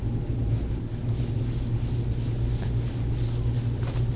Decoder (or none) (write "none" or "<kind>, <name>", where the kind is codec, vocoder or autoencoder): none